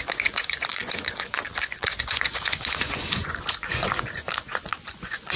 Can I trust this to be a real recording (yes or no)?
no